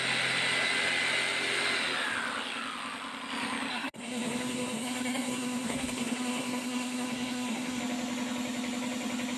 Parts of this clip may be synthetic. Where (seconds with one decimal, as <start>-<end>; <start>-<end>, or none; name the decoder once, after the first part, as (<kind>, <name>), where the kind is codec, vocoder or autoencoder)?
3.7-7.8 (codec, SNAC)